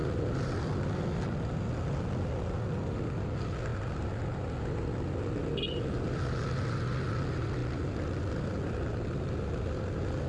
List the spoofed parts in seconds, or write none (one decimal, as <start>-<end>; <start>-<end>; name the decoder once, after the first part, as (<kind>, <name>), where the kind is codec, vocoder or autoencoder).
none